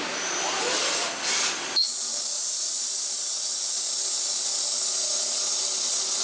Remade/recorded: recorded